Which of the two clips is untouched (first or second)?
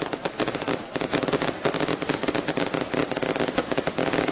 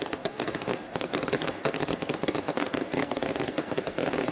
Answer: first